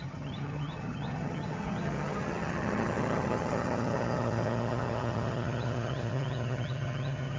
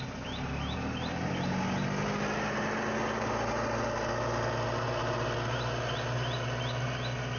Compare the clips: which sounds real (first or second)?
second